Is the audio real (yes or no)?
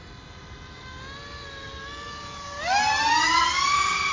yes